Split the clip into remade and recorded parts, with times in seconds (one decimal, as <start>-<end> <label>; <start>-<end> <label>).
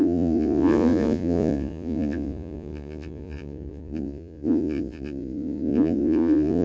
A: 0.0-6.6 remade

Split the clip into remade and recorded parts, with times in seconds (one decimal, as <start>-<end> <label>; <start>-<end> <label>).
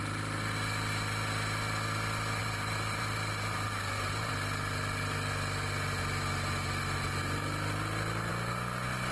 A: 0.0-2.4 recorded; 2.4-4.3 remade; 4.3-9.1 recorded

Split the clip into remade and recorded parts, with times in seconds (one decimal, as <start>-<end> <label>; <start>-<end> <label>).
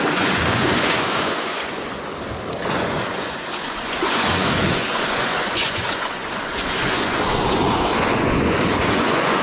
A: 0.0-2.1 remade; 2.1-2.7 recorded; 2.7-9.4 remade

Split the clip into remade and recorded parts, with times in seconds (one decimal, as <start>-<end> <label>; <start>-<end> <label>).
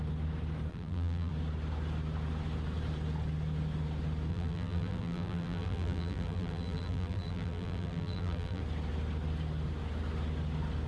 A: 0.0-0.7 recorded; 0.7-1.3 remade; 1.3-4.3 recorded; 4.3-8.6 remade; 8.6-10.9 recorded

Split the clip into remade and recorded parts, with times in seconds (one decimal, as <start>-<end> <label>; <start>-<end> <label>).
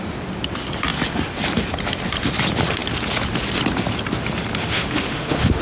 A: 0.0-4.6 recorded; 4.6-5.6 remade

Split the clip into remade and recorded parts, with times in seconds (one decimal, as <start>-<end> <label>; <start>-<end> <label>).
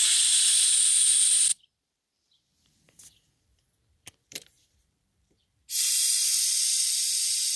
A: 0.0-1.5 recorded; 1.5-6.0 remade; 6.0-7.6 recorded